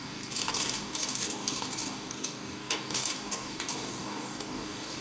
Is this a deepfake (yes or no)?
yes